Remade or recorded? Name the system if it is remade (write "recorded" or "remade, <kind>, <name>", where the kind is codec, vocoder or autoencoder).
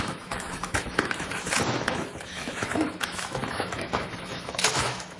remade, autoencoder, DAC-VAE